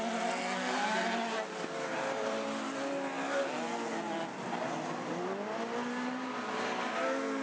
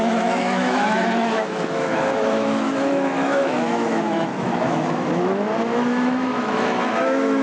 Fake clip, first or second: second